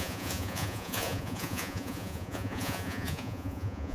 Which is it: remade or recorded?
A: remade